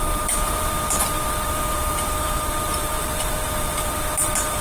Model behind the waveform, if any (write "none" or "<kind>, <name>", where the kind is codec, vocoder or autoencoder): vocoder, BigVGAN v2